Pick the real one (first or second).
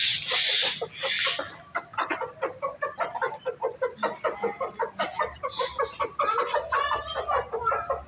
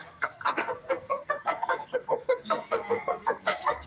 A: first